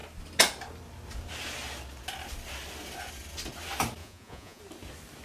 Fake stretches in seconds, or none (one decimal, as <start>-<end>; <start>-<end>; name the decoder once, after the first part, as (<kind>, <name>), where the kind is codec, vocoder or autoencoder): 4.0-4.6 (vocoder, Vocos)